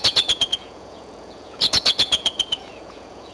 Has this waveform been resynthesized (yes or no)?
yes